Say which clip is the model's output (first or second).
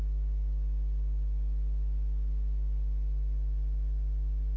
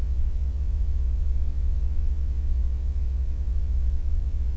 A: second